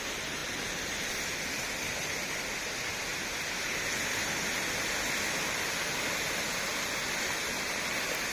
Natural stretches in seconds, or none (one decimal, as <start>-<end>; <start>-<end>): 3.1-7.2